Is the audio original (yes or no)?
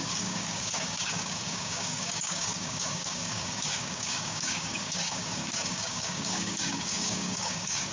no